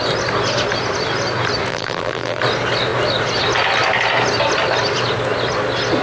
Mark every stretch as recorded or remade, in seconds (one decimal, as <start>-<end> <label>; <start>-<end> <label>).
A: 0.0-1.7 recorded; 1.7-2.4 remade; 2.4-6.0 recorded